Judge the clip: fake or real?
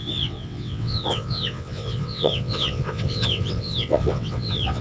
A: fake